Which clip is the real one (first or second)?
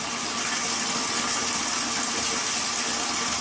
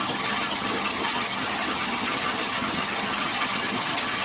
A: first